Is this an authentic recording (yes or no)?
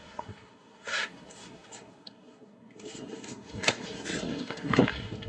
no